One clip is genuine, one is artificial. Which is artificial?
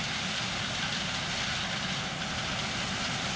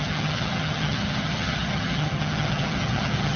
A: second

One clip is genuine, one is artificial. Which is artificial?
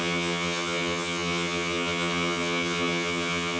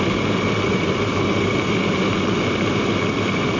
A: first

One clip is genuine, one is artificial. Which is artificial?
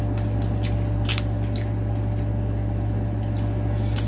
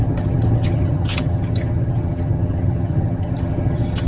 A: second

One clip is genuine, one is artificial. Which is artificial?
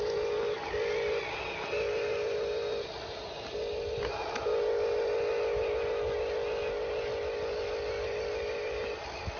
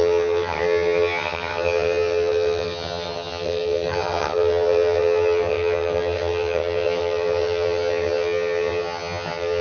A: second